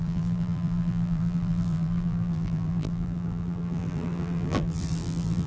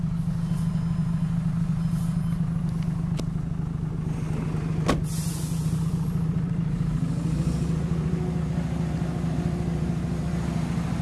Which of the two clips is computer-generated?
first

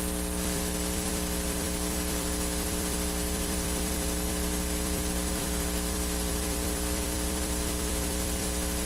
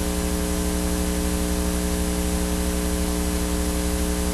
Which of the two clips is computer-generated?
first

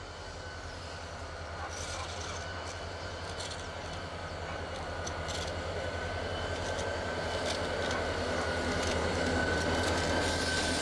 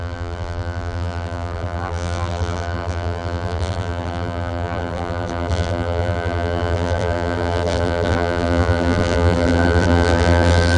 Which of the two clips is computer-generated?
second